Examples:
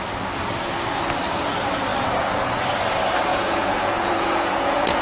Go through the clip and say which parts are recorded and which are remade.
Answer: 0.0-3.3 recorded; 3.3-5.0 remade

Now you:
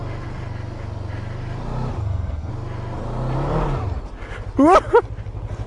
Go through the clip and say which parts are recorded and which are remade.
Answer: 0.0-2.0 recorded; 2.0-2.5 remade; 2.5-5.7 recorded

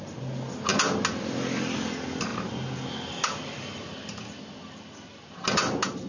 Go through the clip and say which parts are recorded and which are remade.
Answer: 0.0-6.1 recorded

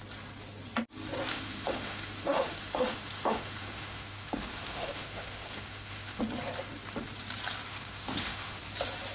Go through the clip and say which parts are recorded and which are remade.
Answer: 0.0-1.3 recorded; 1.3-6.2 remade; 6.2-7.7 recorded; 7.7-8.6 remade; 8.6-9.1 recorded